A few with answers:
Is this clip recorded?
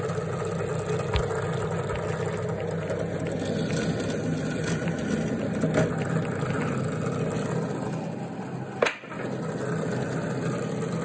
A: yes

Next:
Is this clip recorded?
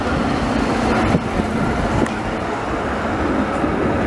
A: yes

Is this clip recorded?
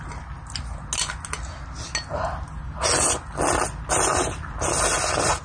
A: yes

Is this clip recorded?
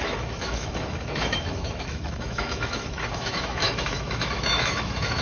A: no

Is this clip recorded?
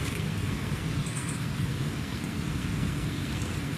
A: no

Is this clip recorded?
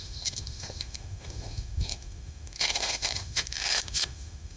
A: no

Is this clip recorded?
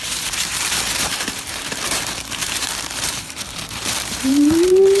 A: no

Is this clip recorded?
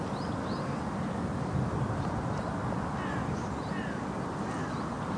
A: yes